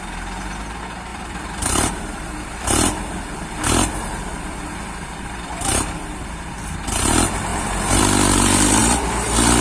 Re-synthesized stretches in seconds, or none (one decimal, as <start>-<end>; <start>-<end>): 1.1-6.1; 7.5-8.0